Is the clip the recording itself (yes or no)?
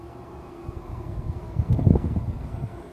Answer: no